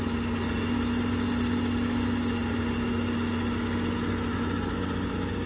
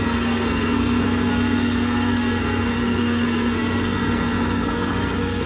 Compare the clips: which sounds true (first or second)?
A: first